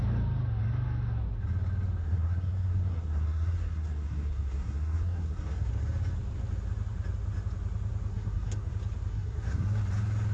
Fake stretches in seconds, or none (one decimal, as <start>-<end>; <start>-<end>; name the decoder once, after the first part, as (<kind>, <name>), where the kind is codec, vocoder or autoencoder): 2.0-5.7 (codec, SNAC); 8.1-8.7; 9.1-9.8